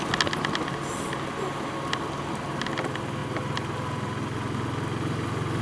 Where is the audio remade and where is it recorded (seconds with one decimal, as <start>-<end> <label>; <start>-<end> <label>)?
0.0-5.6 recorded